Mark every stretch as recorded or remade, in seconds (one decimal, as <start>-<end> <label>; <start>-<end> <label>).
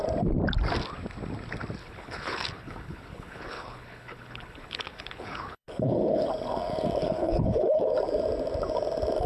0.0-1.8 recorded; 1.8-6.3 remade; 6.3-7.0 recorded; 7.0-7.9 remade; 7.9-9.3 recorded